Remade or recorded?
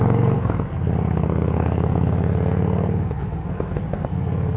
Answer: remade